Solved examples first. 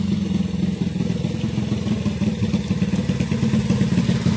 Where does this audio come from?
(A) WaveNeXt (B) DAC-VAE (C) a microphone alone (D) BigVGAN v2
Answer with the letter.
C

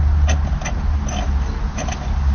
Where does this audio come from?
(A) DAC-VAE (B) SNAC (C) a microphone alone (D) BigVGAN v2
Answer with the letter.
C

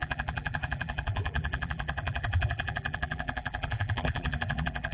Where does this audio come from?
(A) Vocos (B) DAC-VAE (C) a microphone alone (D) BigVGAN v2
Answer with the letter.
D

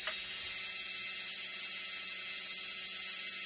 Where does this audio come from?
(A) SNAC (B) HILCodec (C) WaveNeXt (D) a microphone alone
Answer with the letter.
D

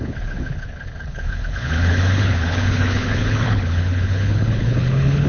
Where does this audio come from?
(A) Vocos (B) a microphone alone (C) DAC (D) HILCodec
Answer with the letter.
D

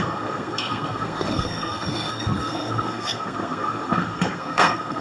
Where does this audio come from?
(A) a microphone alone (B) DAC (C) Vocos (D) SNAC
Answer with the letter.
D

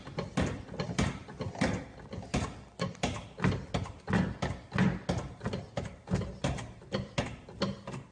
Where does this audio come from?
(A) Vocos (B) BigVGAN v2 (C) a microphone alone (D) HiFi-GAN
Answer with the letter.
C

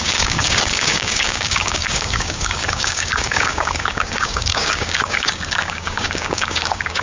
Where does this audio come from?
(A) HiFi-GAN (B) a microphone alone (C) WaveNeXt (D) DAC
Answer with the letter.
D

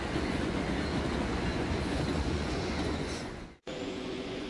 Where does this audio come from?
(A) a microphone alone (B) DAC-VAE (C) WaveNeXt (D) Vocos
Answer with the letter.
D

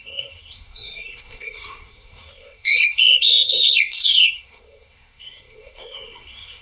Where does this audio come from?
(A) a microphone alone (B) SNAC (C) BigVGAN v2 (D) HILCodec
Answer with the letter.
B